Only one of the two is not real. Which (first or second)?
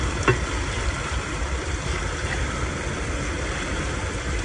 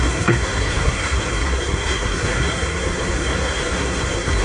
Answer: second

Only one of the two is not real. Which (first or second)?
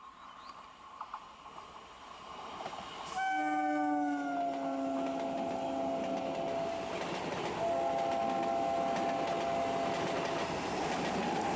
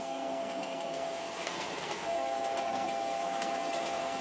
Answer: second